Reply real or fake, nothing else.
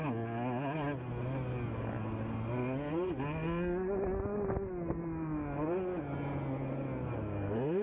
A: real